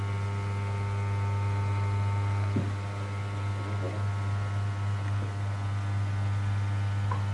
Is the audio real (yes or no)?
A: yes